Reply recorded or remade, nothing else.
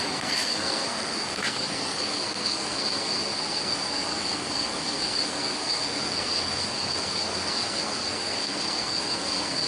remade